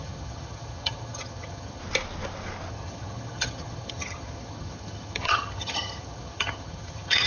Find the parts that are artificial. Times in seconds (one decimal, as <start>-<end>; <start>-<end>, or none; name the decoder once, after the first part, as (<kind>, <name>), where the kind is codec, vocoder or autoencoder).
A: 0.0-1.8 (vocoder, HiFi-GAN); 2.7-7.3